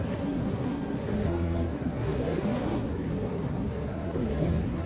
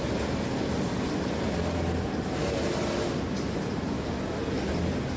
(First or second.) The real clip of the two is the second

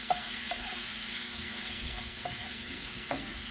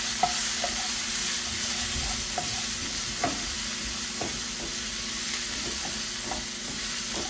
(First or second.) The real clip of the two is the second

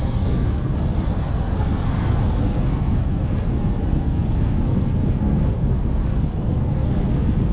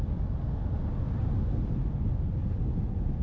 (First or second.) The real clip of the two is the second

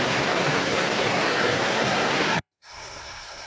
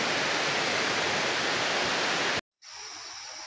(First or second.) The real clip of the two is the second